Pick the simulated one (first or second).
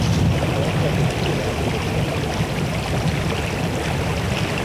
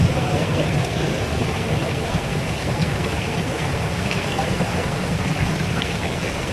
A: second